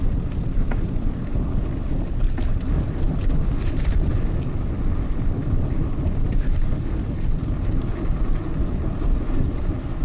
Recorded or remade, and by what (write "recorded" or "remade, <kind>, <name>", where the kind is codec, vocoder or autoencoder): recorded